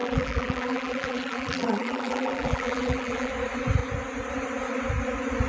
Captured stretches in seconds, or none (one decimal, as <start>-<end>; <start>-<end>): 3.3-5.5